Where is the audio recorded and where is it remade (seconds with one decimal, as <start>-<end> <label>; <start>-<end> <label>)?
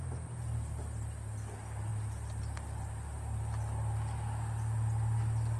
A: 0.0-5.6 recorded